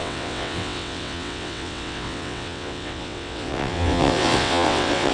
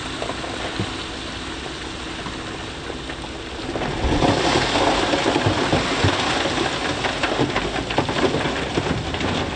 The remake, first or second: first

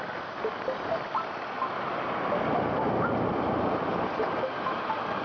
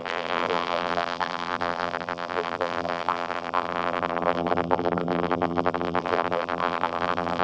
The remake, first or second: second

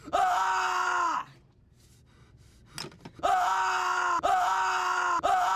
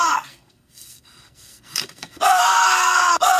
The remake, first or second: second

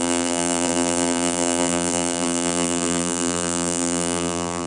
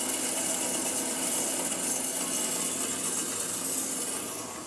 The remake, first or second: first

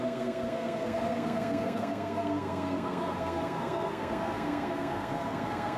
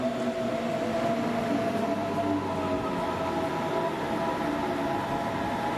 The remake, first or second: first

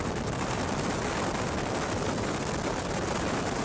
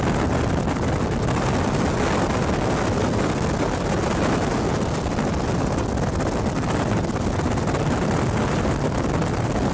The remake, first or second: first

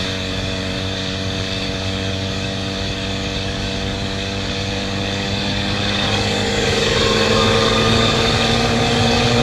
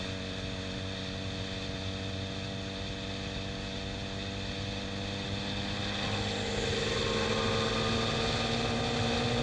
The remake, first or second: first